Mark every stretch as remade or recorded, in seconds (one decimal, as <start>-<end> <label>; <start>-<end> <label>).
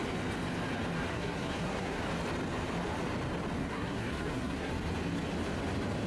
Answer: 0.0-1.1 recorded; 1.1-2.0 remade; 2.0-3.6 recorded; 3.6-4.7 remade; 4.7-6.1 recorded